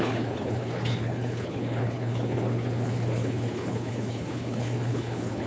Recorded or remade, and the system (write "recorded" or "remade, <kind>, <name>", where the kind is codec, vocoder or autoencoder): remade, codec, HILCodec